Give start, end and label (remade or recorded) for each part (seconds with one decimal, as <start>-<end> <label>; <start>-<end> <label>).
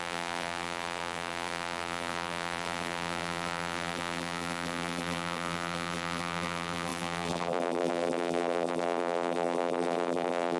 0.0-10.6 remade